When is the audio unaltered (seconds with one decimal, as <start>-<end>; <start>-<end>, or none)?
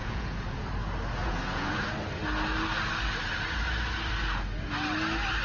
0.7-1.2; 1.8-5.4